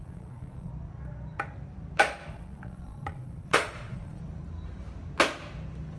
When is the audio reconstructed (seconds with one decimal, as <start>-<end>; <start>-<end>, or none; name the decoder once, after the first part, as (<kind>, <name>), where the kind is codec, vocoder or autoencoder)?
0.0-0.7 (vocoder, Vocos); 2.3-4.2